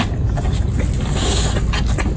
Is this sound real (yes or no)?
yes